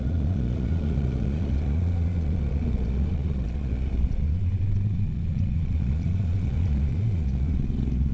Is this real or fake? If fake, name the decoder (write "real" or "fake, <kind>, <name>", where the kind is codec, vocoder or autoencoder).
fake, vocoder, Vocos